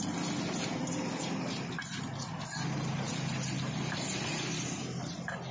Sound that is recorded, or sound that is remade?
recorded